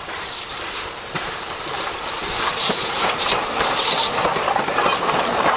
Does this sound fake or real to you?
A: fake